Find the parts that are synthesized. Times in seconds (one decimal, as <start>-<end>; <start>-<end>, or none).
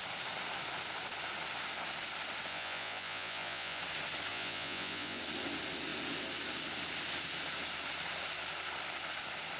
2.5-3.8; 4.3-5.2